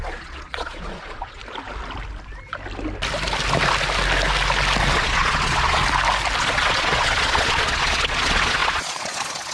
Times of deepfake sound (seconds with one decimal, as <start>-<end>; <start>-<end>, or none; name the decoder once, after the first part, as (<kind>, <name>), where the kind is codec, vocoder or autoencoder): 0.0-1.4 (vocoder, Vocos); 4.9-5.8; 6.4-9.5